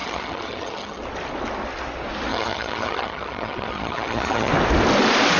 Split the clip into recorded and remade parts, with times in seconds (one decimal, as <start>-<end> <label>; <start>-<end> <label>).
0.0-1.0 remade; 1.0-2.3 recorded; 2.3-4.5 remade; 4.5-5.4 recorded